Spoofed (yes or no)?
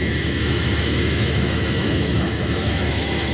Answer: yes